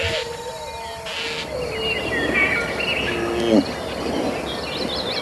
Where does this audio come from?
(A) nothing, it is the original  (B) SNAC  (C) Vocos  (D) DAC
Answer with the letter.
A